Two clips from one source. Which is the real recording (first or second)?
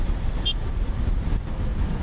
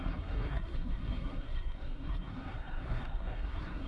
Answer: first